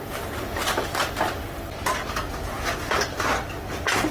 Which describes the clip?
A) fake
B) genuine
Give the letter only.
B